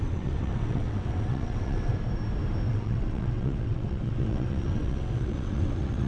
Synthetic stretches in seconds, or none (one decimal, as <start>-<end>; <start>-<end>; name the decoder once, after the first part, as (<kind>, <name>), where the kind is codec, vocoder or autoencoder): 0.0-1.9 (vocoder, WaveNeXt); 2.7-6.1